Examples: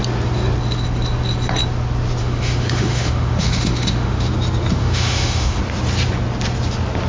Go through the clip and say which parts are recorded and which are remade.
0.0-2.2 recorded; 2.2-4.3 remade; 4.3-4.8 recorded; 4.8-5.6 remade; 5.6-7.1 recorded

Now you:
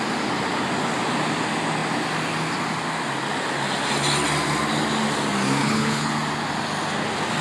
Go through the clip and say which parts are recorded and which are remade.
0.0-5.6 recorded; 5.6-6.1 remade; 6.1-7.4 recorded

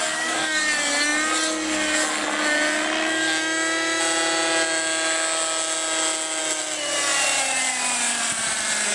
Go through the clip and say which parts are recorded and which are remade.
0.0-0.6 remade; 0.6-8.9 recorded